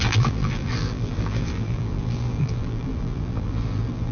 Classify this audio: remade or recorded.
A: remade